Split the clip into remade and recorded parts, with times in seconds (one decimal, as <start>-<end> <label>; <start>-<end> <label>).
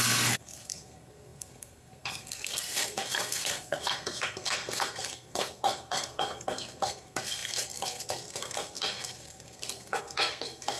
0.0-10.8 remade